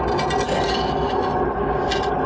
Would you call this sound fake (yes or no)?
no